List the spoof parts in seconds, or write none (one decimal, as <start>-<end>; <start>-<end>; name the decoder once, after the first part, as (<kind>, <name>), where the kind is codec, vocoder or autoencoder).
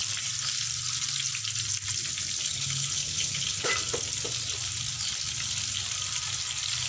2.5-3.7 (codec, HILCodec)